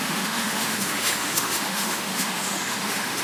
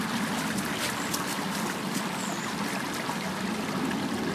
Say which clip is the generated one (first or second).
first